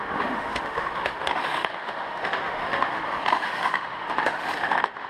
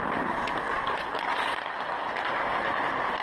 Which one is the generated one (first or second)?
first